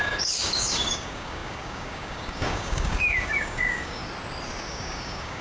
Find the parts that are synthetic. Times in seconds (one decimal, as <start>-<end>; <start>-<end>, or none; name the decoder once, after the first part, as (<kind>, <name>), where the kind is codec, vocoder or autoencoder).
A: 0.0-4.0 (codec, DAC); 4.7-5.4